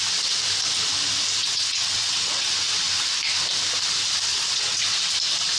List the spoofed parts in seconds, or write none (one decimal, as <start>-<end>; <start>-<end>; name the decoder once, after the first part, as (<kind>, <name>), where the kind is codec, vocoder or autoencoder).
1.4-2.5 (vocoder, WaveNeXt); 4.3-4.8